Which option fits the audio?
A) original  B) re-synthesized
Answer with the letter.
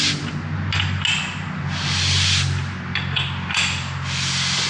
A